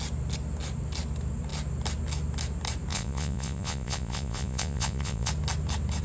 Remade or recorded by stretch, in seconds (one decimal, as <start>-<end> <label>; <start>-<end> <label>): 0.0-2.9 recorded; 2.9-5.3 remade; 5.3-6.0 recorded